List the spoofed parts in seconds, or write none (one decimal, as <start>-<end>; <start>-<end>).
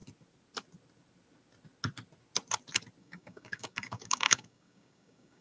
3.0-5.4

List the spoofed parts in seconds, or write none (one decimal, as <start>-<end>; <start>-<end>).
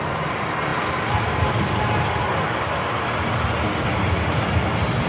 none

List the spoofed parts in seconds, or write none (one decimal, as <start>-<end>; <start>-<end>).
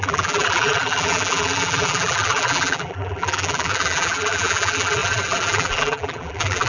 0.0-6.7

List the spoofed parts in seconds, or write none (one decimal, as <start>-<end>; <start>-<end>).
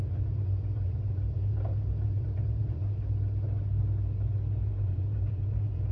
0.0-2.8; 4.7-5.9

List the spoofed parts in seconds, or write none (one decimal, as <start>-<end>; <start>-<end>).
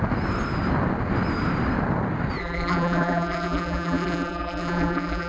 2.4-5.3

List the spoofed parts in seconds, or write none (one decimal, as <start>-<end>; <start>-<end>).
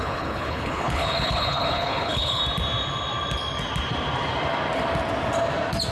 0.0-2.4